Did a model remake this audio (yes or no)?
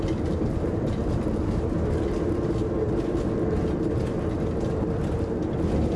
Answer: no